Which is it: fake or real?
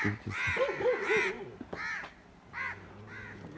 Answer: real